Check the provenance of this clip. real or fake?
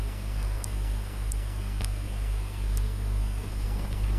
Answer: fake